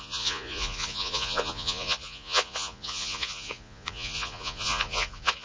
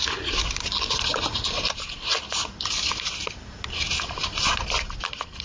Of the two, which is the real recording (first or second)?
second